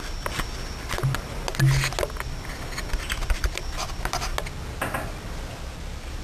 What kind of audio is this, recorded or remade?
recorded